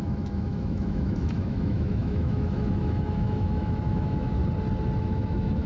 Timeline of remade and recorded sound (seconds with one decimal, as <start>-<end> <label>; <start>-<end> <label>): 0.0-4.4 remade; 4.4-5.0 recorded; 5.0-5.7 remade